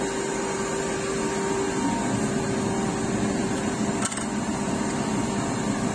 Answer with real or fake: real